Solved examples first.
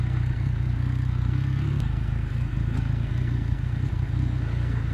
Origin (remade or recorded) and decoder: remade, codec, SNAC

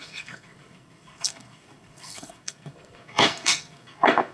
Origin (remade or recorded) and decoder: remade, codec, SNAC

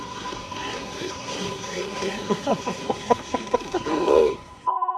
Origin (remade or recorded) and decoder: remade, codec, SNAC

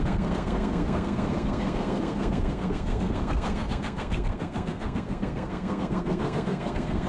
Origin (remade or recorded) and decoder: remade, codec, SNAC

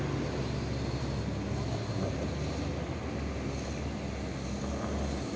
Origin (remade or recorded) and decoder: recorded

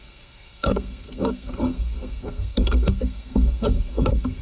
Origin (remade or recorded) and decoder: remade, codec, SNAC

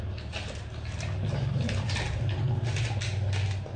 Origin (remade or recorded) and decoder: recorded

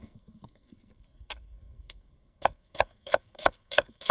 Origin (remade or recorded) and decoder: remade, codec, SNAC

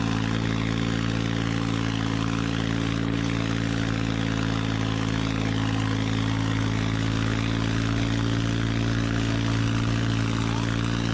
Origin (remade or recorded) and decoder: recorded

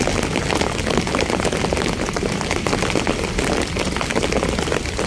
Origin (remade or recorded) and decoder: recorded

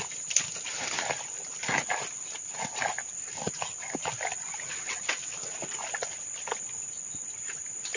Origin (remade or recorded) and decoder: recorded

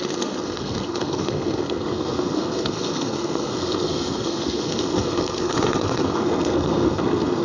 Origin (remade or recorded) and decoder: remade, codec, SNAC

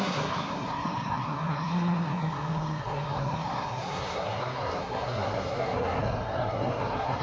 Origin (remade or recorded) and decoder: remade, codec, SNAC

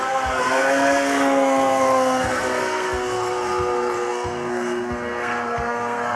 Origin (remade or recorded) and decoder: remade, codec, SNAC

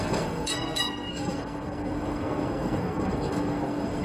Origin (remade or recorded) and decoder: remade, codec, SNAC